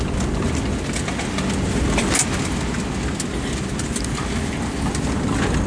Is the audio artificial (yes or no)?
no